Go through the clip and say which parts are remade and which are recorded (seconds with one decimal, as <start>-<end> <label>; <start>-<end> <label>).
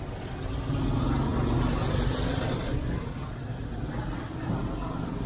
0.0-5.3 recorded